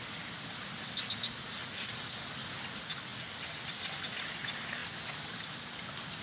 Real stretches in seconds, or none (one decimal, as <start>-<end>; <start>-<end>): 0.0-6.2